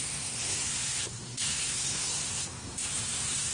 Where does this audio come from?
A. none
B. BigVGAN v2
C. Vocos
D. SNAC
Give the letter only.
D